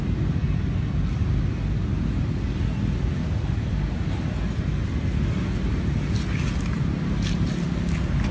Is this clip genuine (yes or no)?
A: yes